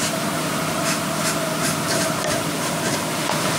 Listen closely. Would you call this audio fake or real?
real